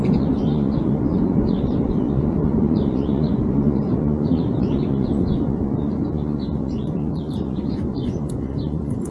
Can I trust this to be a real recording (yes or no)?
no